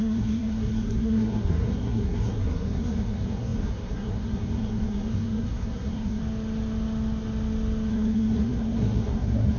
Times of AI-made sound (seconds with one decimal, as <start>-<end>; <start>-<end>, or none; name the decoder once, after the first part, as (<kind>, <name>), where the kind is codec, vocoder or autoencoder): 0.0-6.2 (codec, SNAC); 7.9-9.6